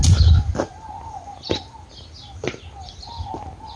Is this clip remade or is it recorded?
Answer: recorded